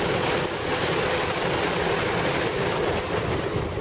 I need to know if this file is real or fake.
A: real